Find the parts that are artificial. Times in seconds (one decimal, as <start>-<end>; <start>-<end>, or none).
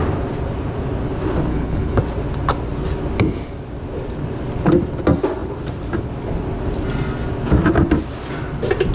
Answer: 1.5-2.0